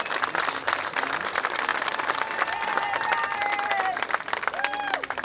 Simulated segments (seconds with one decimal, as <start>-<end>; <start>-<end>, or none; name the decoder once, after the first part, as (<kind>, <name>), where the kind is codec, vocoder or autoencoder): none